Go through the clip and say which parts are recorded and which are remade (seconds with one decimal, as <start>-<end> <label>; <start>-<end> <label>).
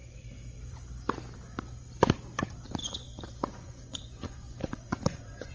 0.0-2.8 recorded; 2.8-5.5 remade